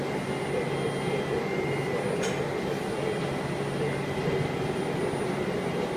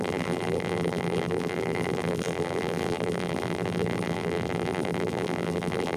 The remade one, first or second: second